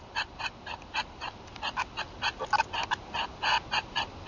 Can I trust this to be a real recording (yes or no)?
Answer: yes